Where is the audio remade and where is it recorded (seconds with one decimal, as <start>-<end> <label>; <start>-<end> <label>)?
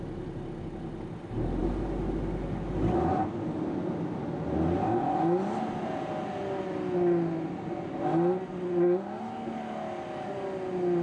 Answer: 0.0-11.0 recorded